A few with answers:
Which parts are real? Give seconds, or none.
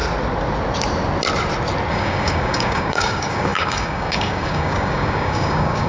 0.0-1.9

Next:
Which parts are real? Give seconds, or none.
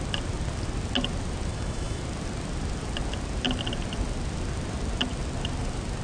0.0-1.5; 2.0-6.0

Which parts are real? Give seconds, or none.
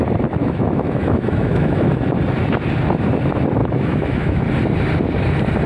0.0-0.4; 1.9-3.6; 4.4-5.7